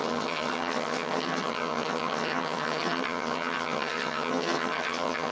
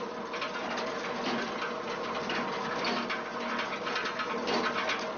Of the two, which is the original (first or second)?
second